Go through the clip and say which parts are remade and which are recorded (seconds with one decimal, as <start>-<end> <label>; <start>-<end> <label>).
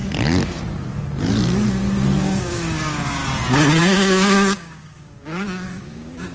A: 0.0-2.2 recorded; 2.2-3.2 remade; 3.2-3.8 recorded; 3.8-6.3 remade